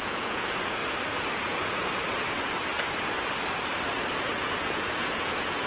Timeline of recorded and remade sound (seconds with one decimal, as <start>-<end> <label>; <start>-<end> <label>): 0.0-0.8 remade; 0.8-4.2 recorded; 4.2-5.7 remade